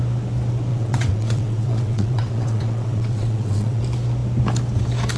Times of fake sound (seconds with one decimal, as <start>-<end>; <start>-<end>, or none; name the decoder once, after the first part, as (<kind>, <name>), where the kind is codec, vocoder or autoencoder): 0.7-3.8 (vocoder, WaveNeXt)